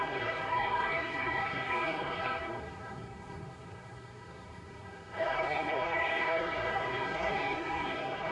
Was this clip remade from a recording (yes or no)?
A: yes